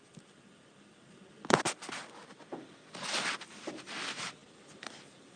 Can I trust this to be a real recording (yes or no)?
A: yes